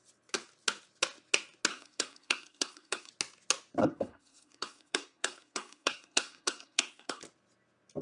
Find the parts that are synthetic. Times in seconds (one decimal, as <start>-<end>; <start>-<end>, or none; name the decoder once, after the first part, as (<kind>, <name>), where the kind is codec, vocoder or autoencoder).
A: 1.7-3.1 (codec, SNAC); 3.8-7.2